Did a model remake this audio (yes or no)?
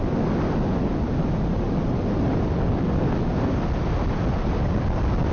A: no